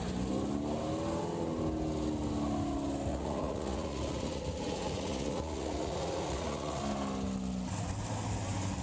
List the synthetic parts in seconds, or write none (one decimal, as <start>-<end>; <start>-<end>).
3.1-6.8